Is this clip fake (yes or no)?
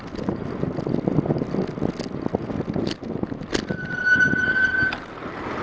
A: no